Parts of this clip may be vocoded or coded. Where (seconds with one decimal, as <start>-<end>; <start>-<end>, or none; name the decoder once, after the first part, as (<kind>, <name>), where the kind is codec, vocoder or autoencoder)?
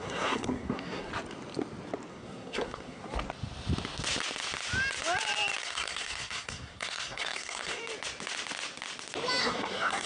0.0-1.1 (codec, SNAC); 2.1-3.0; 5.6-7.8; 9.4-10.1